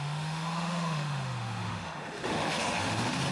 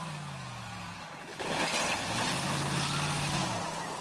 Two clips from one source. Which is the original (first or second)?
second